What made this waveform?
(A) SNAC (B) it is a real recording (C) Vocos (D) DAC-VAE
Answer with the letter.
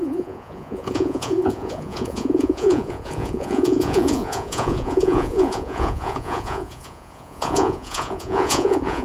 C